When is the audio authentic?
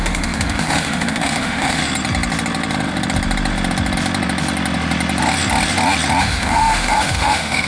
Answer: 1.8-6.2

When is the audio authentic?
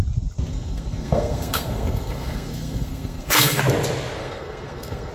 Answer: 0.0-0.5; 3.6-4.2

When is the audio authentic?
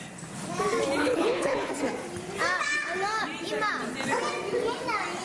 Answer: 0.0-1.0; 1.7-5.2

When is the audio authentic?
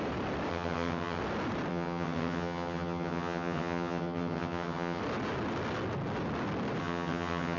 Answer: 0.0-0.5; 1.2-1.7; 5.0-6.8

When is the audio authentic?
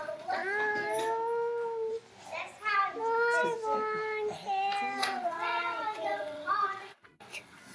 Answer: 0.4-5.0